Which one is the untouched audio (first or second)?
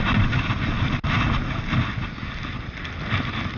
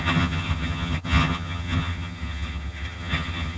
first